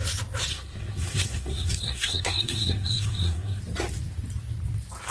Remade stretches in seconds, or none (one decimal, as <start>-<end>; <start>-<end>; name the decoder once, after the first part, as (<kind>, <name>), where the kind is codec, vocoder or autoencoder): 0.5-3.6 (codec, SNAC)